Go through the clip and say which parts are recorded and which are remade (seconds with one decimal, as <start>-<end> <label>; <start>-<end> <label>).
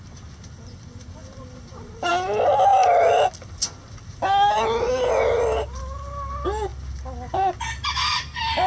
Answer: 0.0-8.7 recorded